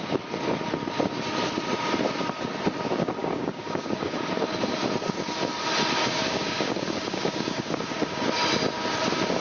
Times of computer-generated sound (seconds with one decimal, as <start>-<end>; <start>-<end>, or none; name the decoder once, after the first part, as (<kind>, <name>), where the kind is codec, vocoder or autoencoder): 3.2-4.2 (codec, DAC); 6.0-8.2